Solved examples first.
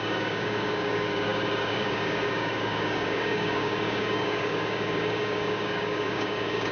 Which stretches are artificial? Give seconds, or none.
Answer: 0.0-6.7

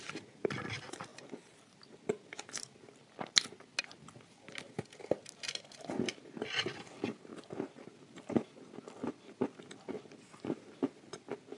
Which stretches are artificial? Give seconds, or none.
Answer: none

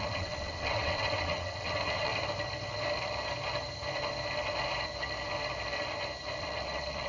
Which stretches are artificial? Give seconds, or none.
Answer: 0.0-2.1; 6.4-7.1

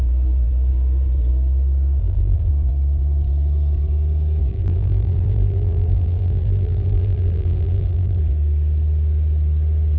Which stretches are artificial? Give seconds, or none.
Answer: 2.0-2.5; 4.5-8.2

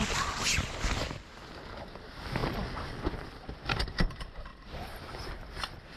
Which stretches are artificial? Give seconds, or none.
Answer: 4.5-5.1